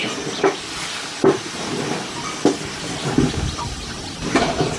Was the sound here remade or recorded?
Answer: recorded